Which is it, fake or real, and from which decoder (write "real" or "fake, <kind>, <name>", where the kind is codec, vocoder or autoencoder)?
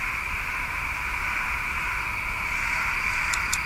real